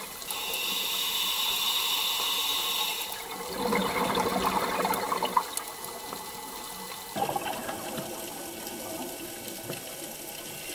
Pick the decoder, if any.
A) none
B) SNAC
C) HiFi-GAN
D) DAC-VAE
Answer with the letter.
A